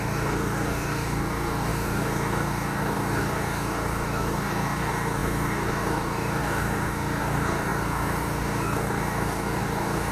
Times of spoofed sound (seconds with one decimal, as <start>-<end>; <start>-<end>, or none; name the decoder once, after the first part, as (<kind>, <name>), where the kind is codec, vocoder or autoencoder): 0.0-10.1 (codec, DAC)